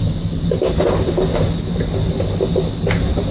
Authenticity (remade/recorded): recorded